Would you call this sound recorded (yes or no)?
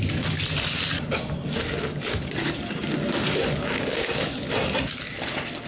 yes